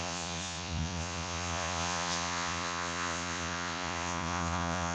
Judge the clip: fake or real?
fake